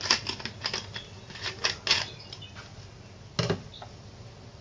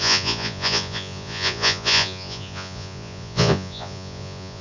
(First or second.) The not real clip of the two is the second